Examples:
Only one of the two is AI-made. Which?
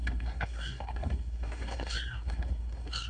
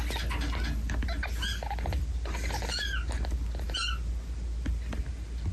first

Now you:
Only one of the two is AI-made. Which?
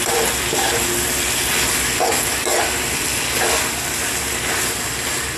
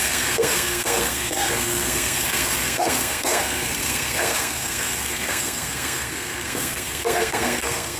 second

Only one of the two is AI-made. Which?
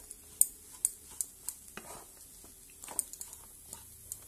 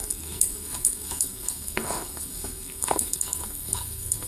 second